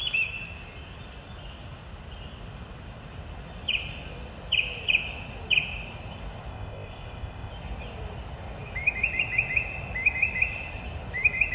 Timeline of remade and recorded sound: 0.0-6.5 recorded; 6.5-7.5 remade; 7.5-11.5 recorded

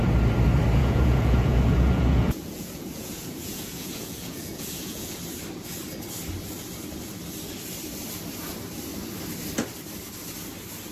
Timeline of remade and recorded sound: 0.0-0.8 recorded; 0.8-5.2 remade; 5.2-10.9 recorded

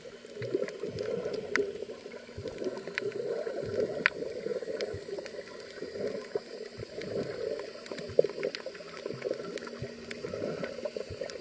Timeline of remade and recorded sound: 0.0-11.4 recorded

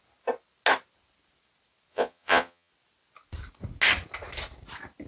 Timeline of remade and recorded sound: 0.0-1.9 recorded; 1.9-2.7 remade; 2.7-5.1 recorded

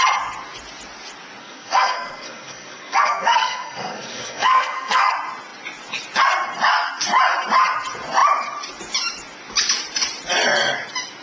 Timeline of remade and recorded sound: 0.0-1.4 recorded; 1.4-5.1 remade; 5.1-11.2 recorded

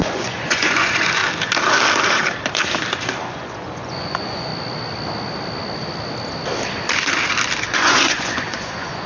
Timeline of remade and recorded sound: 0.0-1.2 remade; 1.2-3.2 recorded; 3.2-4.5 remade; 4.5-7.7 recorded; 7.7-9.1 remade

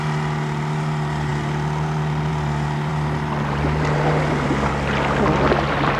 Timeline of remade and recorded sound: 0.0-6.0 recorded

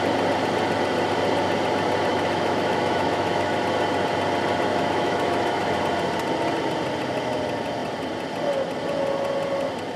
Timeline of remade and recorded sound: 0.0-2.1 recorded; 2.1-3.6 remade; 3.6-4.7 recorded; 4.7-5.8 remade; 5.8-10.0 recorded